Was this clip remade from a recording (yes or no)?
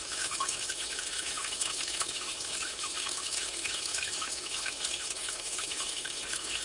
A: yes